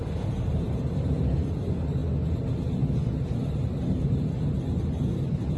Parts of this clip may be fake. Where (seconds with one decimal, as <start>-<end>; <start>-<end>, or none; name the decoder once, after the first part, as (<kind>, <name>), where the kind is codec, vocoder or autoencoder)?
0.0-2.0 (vocoder, BigVGAN v2)